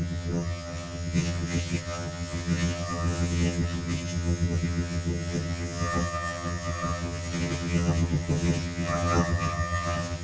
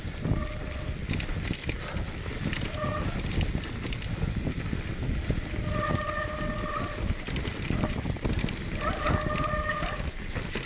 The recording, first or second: second